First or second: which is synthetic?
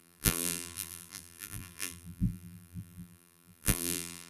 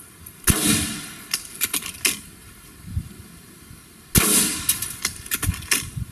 first